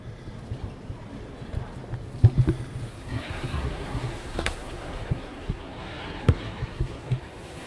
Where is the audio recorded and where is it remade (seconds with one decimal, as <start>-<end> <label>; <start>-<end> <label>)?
0.0-2.9 recorded; 2.9-7.7 remade